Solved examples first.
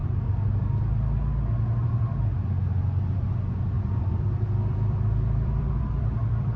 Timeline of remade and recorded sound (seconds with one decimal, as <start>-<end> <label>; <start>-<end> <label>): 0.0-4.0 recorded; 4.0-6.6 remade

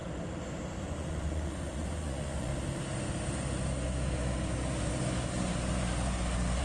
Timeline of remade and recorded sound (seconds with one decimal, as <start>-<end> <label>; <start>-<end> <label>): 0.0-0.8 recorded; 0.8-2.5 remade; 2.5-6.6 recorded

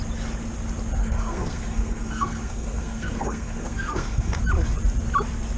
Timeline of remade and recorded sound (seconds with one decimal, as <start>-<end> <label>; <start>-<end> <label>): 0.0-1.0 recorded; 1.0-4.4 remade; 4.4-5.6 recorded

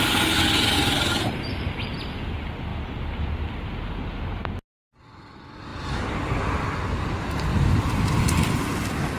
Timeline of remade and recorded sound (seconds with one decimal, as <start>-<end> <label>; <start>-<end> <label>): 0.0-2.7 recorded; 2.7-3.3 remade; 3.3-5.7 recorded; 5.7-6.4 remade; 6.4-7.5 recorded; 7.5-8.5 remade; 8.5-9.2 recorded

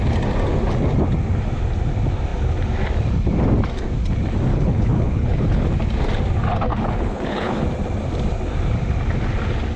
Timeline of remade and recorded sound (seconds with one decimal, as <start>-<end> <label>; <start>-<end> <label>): 0.0-4.5 recorded; 4.5-5.6 remade; 5.6-6.7 recorded; 6.7-7.6 remade; 7.6-9.8 recorded